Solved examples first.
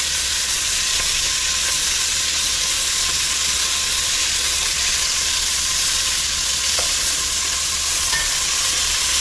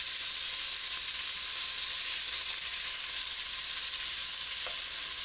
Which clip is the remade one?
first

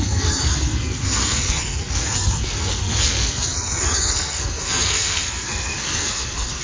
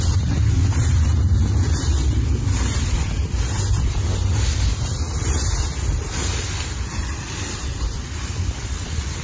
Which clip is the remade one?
first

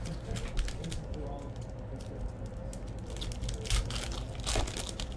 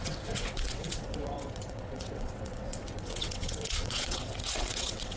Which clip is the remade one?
second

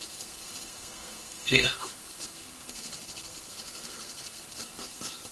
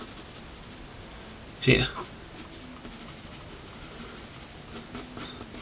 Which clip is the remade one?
first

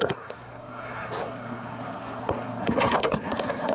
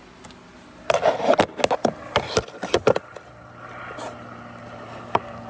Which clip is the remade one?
first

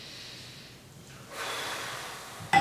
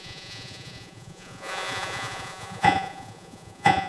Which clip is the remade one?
second